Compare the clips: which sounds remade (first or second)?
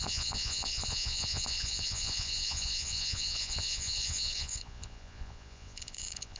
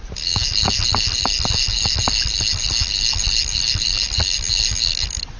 first